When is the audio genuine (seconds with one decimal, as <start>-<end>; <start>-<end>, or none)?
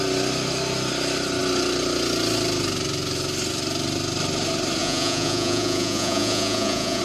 0.0-4.8